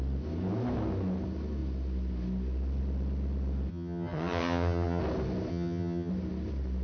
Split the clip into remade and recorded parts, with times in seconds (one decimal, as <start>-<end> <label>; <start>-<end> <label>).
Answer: 0.0-3.7 recorded; 3.7-5.0 remade; 5.0-5.5 recorded; 5.5-6.1 remade; 6.1-6.8 recorded